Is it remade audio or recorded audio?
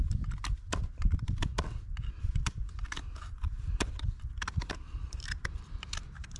remade